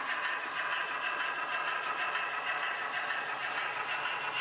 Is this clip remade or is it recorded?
recorded